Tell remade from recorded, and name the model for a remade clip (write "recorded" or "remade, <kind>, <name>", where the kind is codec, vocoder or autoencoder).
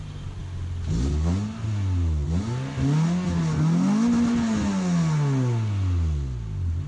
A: recorded